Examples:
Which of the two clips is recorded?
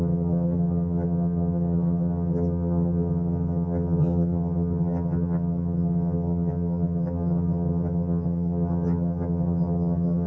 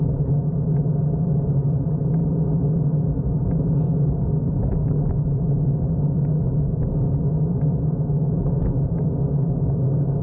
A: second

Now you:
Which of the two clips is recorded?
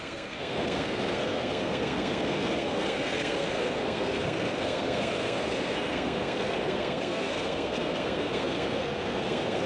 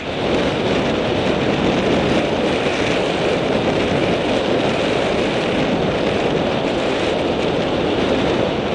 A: second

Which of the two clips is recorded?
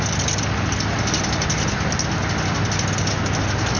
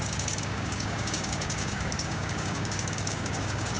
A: first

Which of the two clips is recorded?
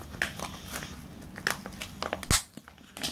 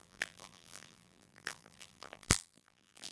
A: first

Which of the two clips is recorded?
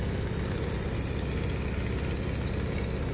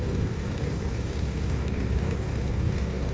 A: first